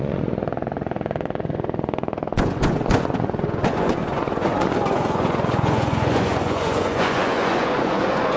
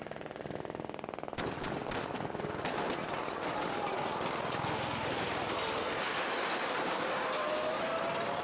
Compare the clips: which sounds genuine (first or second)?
second